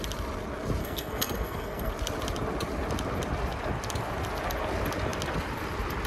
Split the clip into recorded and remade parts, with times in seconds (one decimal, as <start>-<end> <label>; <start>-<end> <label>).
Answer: 0.0-0.8 recorded; 0.8-1.9 remade; 1.9-6.1 recorded